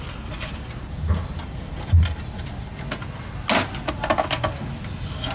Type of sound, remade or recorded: recorded